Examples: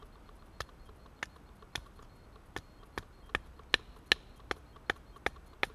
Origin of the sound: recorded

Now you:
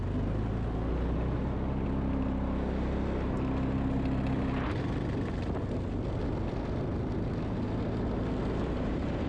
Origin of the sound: recorded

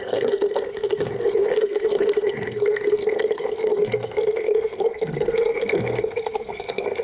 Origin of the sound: remade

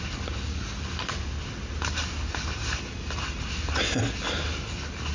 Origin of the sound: recorded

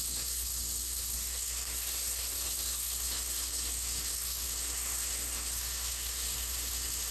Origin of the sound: remade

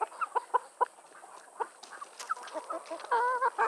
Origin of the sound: recorded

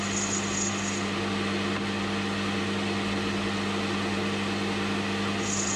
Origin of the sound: recorded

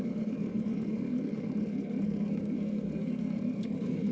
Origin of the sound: remade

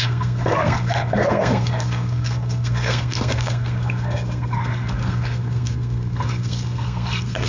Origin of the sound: remade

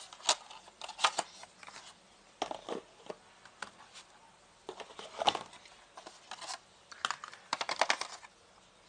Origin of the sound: recorded